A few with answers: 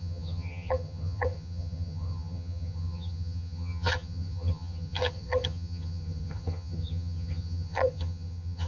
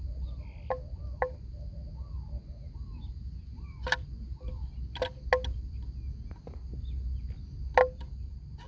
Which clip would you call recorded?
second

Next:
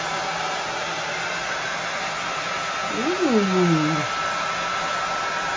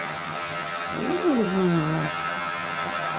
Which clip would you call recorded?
first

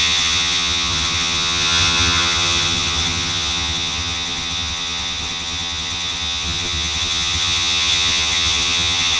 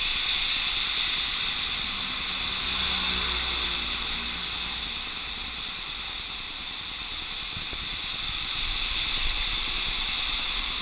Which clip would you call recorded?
second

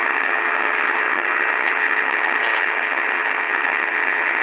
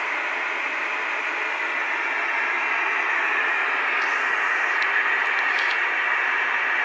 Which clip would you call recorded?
second